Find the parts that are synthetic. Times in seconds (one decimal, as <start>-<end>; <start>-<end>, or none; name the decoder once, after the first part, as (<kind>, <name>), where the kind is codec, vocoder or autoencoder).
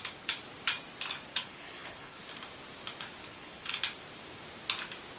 1.3-2.2 (codec, HILCodec); 3.2-3.8